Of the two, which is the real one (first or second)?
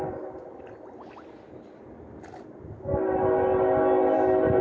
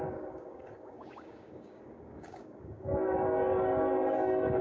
first